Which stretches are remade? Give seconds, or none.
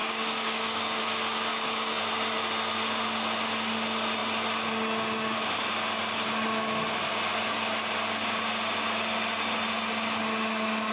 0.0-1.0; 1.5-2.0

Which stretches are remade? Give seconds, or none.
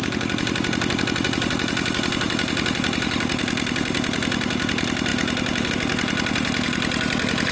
none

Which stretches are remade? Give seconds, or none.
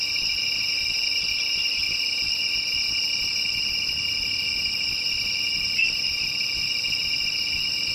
0.0-1.5; 5.5-7.9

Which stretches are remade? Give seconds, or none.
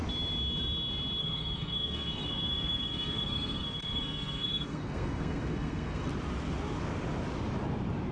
1.2-6.1